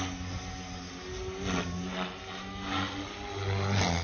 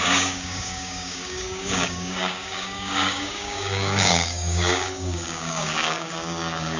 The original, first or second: first